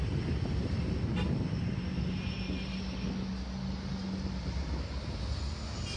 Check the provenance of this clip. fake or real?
real